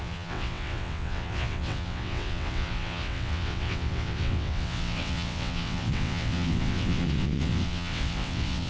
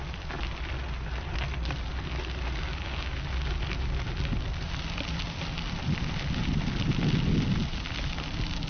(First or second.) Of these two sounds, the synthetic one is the first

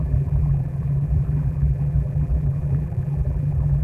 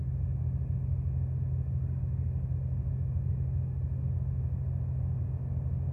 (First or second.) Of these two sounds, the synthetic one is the first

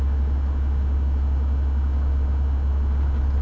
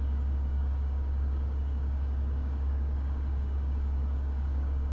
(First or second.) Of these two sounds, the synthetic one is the second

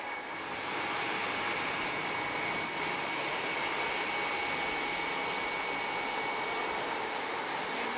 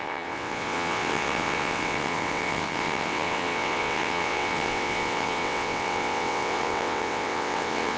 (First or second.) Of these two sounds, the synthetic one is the second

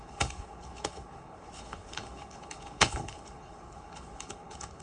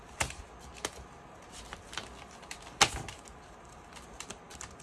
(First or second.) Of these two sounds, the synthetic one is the first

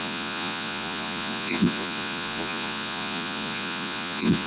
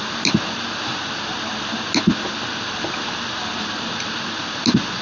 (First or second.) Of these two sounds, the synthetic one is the first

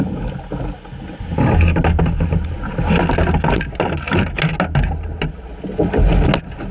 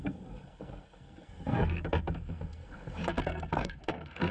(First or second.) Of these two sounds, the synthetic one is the second